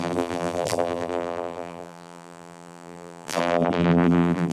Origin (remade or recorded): remade